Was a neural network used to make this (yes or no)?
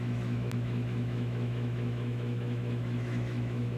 yes